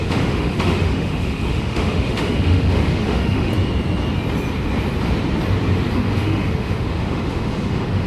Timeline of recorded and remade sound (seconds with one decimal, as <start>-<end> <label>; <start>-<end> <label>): 0.0-3.5 remade; 3.5-5.9 recorded; 5.9-8.1 remade